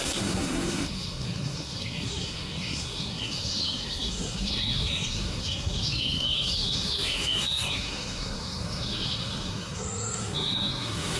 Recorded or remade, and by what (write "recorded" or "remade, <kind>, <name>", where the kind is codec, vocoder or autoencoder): remade, codec, SNAC